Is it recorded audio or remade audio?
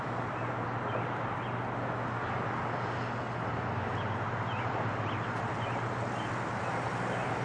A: recorded